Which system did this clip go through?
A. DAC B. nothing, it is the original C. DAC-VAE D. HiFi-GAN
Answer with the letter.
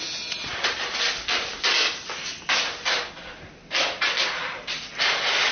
B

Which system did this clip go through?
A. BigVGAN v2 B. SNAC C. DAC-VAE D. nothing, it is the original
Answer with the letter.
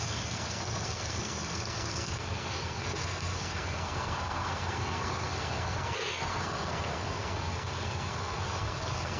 B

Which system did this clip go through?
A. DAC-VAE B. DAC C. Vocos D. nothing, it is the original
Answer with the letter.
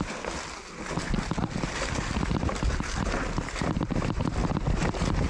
D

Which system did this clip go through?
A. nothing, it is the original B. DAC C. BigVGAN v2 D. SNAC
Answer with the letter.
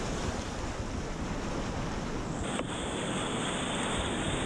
A